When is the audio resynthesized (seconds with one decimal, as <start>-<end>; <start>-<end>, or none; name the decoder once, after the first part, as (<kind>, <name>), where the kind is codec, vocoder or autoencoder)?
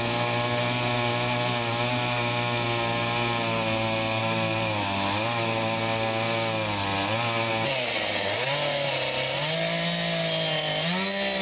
4.2-5.8 (autoencoder, DAC-VAE)